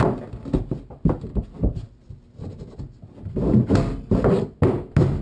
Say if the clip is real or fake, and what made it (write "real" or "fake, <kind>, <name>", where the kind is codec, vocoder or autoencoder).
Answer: real